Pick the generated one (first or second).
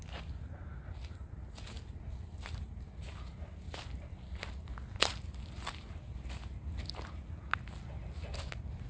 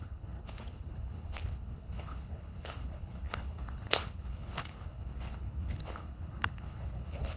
second